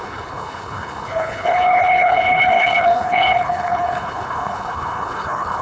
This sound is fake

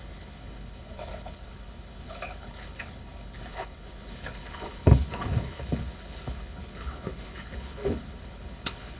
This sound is fake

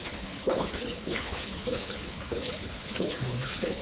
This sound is fake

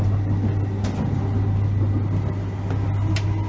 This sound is real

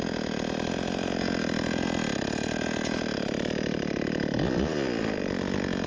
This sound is real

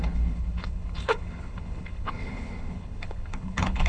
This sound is fake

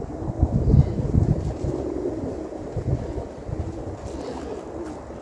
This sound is real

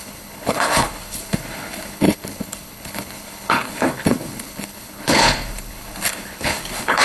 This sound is fake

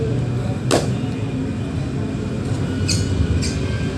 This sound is real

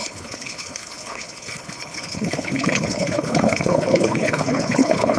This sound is fake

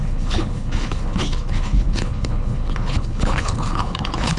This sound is fake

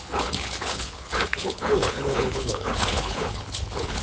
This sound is fake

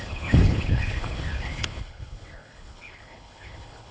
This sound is fake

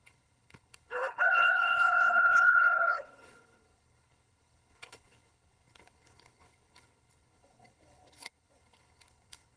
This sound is fake